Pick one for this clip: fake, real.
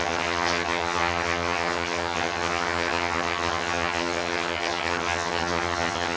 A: fake